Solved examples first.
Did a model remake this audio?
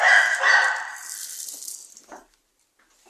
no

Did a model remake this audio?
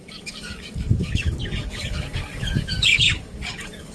yes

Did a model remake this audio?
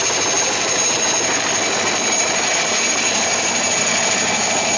no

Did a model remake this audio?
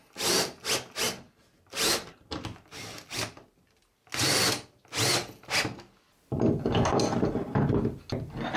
no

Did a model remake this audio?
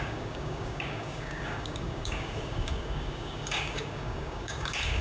yes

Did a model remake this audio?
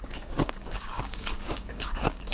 yes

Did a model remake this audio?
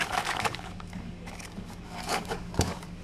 yes